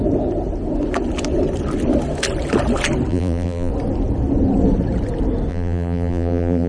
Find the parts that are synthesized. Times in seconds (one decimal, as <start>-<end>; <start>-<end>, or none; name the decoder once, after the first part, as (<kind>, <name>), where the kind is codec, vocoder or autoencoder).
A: 3.1-3.7 (vocoder, BigVGAN v2); 5.5-6.7